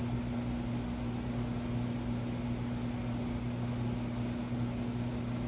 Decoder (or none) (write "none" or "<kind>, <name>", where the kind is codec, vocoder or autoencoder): none